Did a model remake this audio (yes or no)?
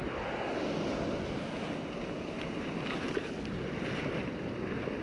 no